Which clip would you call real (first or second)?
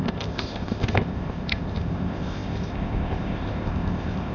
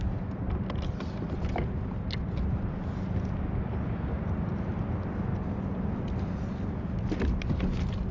second